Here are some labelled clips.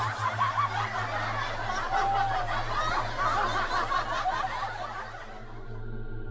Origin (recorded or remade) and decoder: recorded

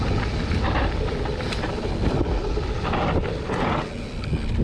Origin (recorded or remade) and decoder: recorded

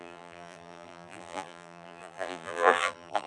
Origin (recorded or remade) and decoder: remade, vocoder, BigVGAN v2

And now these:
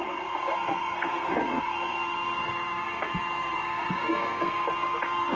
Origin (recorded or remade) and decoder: remade, codec, SNAC